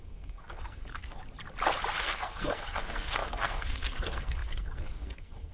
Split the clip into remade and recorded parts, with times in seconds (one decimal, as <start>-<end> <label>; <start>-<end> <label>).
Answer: 0.0-1.2 remade; 1.2-2.0 recorded; 2.0-5.5 remade